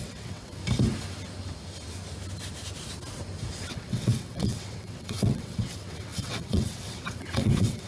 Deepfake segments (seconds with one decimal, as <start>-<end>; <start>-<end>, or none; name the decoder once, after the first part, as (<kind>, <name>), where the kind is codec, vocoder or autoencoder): 0.0-0.6 (vocoder, WaveNeXt); 3.7-7.9